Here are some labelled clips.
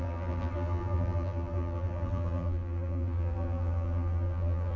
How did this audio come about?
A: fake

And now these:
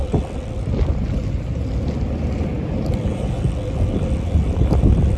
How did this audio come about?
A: real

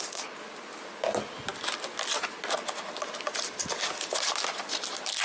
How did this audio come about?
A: real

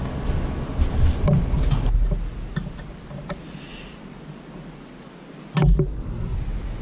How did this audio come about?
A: real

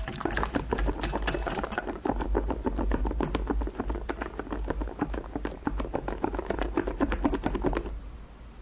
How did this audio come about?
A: fake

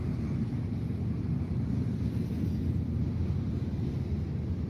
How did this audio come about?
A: real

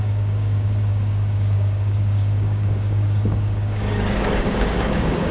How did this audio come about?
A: fake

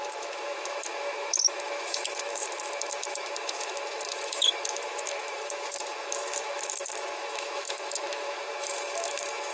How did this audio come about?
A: fake